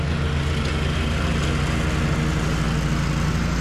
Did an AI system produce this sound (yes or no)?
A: no